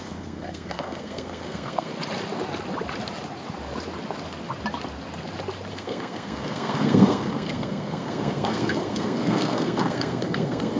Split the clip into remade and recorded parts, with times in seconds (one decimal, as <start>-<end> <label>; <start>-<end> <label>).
0.0-1.9 remade; 1.9-5.7 recorded; 5.7-10.8 remade